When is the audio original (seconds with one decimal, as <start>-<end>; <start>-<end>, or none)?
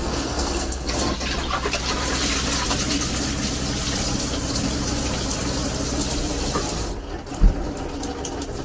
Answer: 0.9-8.6